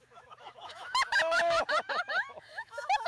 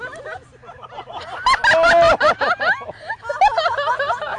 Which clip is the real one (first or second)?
second